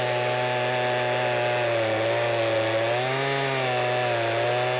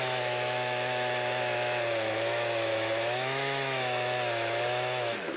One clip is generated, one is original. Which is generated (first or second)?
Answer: second